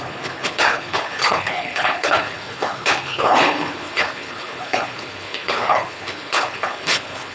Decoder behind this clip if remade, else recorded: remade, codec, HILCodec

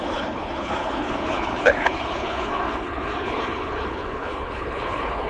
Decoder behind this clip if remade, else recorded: remade, codec, HILCodec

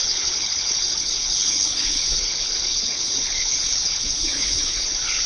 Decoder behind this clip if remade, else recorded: remade, codec, HILCodec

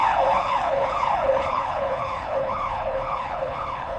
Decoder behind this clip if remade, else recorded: remade, codec, HILCodec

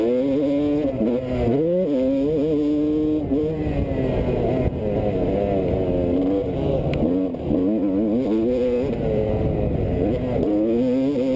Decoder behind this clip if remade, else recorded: recorded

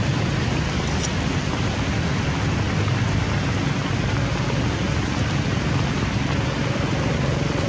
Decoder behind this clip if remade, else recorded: recorded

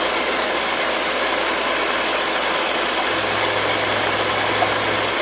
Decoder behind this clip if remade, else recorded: recorded